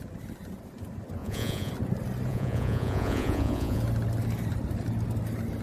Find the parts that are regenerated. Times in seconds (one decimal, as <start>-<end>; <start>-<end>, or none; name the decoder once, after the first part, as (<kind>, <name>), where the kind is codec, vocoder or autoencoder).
1.2-1.7 (vocoder, Vocos); 2.3-3.8